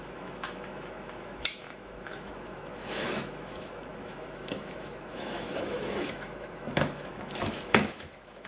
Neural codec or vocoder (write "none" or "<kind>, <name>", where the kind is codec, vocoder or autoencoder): autoencoder, DAC-VAE